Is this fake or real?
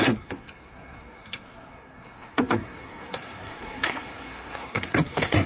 fake